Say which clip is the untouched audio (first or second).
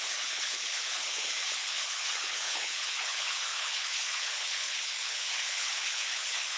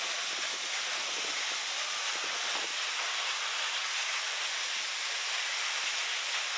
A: second